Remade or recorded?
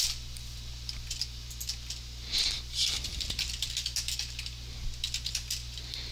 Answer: recorded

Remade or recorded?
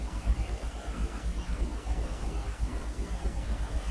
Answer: remade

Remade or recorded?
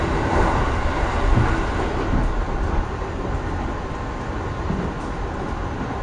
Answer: recorded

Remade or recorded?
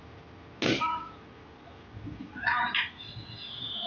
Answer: recorded